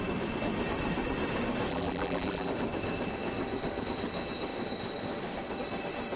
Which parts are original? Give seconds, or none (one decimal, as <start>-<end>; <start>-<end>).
0.0-1.7; 2.5-6.2